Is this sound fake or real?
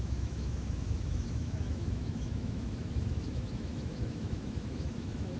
fake